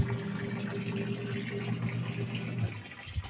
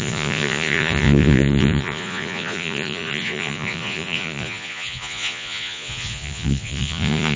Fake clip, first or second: second